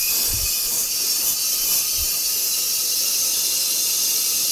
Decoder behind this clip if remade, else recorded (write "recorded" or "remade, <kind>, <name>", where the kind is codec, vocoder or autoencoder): recorded